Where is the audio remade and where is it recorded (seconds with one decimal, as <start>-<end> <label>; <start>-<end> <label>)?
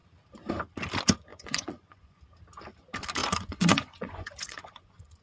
0.0-1.3 recorded; 1.3-2.2 remade; 2.2-3.2 recorded; 3.2-5.2 remade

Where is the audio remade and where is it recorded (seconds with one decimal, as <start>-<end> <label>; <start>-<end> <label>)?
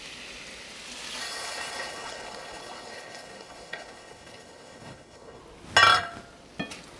0.0-1.2 recorded; 1.2-5.4 remade; 5.4-7.0 recorded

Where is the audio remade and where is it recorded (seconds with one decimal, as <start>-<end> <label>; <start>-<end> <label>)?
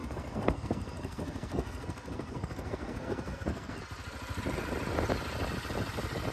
0.0-3.8 remade; 3.8-6.3 recorded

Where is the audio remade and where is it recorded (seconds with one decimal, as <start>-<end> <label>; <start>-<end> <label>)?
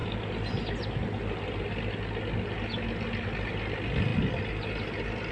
0.0-5.3 recorded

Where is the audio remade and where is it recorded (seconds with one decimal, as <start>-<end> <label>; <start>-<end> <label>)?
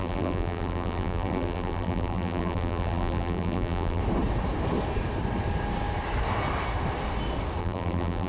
0.0-4.0 remade; 4.0-7.6 recorded; 7.6-8.3 remade